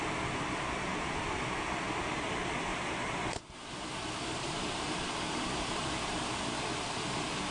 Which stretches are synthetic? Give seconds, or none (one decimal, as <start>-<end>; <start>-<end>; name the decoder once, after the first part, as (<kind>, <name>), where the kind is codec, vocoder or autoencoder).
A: 2.7-3.4 (vocoder, BigVGAN v2); 4.4-6.3